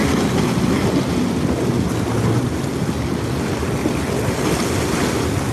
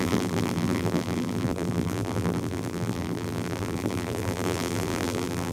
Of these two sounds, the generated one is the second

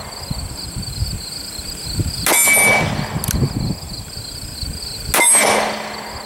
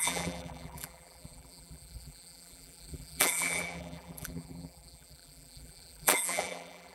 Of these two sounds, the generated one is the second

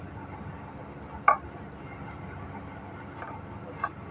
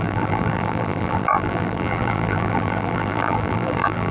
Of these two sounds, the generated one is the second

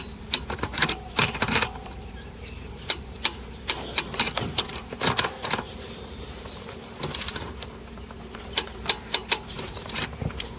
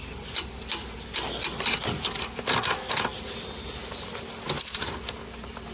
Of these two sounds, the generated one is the first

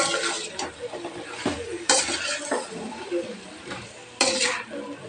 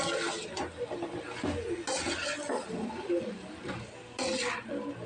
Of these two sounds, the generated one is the first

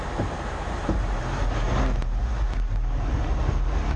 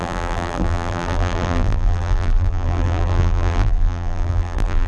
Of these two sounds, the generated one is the second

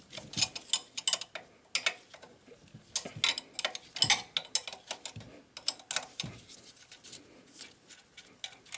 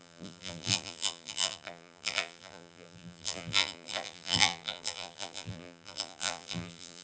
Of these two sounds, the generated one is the second